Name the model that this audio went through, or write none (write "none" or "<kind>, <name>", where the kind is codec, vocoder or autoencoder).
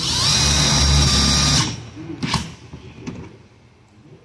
none